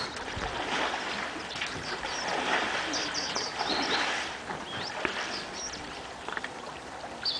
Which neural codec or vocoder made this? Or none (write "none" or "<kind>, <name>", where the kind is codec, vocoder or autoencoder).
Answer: none